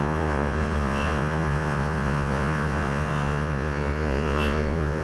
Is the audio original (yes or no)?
no